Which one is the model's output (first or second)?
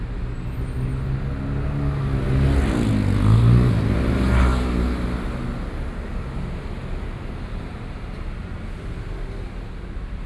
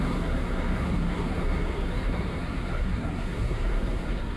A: second